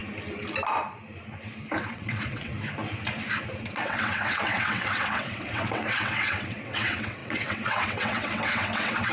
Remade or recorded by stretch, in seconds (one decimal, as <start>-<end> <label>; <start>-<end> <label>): 0.0-1.9 recorded; 1.9-2.5 remade; 2.5-3.6 recorded; 3.6-9.1 remade